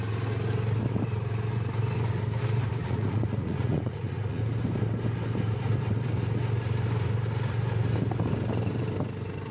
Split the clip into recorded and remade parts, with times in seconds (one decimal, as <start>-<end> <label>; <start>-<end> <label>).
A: 0.0-2.8 recorded; 2.8-4.4 remade; 4.4-9.5 recorded